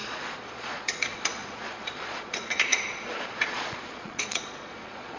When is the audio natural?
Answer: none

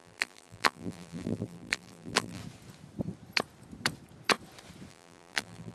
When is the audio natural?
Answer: 2.4-4.9